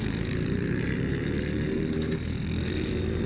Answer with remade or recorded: remade